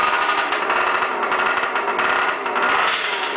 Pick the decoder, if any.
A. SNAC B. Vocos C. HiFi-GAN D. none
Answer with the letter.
D